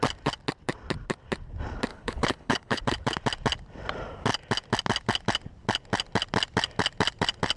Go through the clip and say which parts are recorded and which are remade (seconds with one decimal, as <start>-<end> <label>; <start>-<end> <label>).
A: 0.0-1.9 recorded; 1.9-2.8 remade; 2.8-7.6 recorded